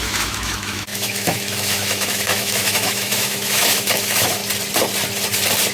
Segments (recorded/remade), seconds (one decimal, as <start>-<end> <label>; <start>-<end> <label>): 0.0-4.4 remade; 4.4-5.7 recorded